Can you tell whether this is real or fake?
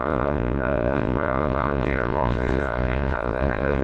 fake